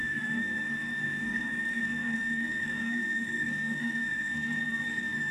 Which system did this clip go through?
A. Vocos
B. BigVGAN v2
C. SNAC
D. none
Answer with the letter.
C